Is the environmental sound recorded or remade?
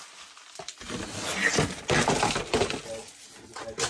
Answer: recorded